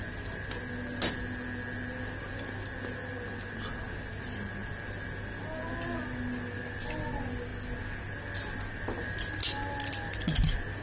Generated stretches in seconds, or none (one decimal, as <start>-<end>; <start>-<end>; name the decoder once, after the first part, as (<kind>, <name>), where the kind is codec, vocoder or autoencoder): none